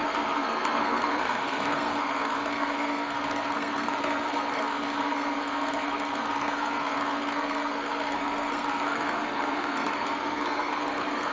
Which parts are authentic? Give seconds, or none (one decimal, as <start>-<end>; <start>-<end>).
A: none